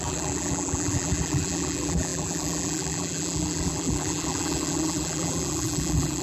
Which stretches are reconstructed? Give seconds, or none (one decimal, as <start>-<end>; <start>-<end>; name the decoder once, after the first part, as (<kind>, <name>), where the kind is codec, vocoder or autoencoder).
0.0-6.2 (vocoder, BigVGAN v2)